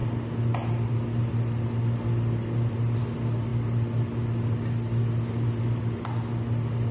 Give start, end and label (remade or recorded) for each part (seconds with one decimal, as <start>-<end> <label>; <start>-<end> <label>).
0.0-6.9 recorded